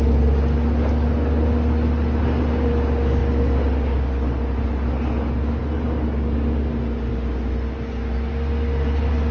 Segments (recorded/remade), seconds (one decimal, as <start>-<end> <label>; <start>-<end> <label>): 0.0-9.3 recorded